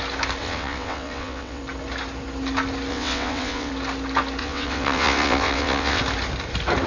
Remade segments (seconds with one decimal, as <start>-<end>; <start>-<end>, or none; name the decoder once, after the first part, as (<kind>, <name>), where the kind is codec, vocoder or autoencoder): 0.4-1.6 (vocoder, WaveNeXt); 2.9-3.7; 4.4-6.0